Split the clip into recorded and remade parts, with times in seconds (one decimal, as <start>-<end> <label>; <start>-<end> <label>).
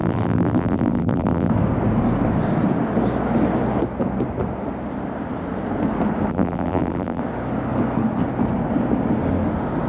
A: 0.0-1.5 remade; 1.5-6.3 recorded; 6.3-7.2 remade; 7.2-9.9 recorded